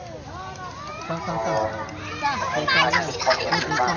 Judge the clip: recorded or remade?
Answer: recorded